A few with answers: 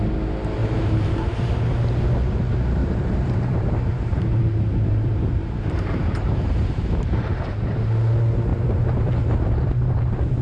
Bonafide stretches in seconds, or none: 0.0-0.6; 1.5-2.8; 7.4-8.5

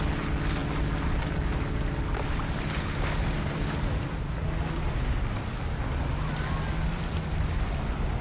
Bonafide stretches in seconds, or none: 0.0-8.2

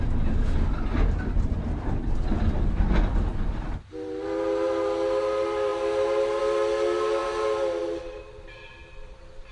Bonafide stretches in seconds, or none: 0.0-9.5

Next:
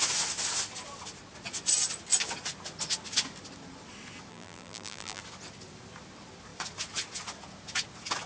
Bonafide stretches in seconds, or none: 0.0-4.3; 5.2-8.3

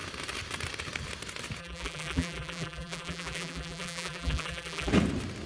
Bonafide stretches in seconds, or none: 0.0-1.6; 4.9-5.5

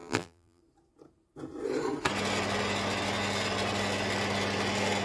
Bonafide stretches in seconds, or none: 0.6-5.0